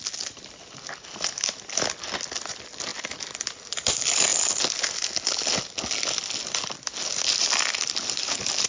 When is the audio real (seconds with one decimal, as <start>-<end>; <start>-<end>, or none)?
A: 0.0-8.7